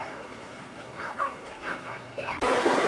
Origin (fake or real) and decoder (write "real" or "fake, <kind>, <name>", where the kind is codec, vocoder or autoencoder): fake, codec, SNAC